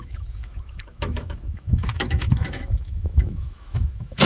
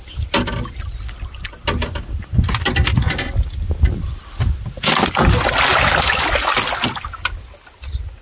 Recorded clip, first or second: second